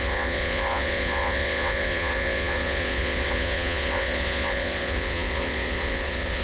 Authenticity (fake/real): fake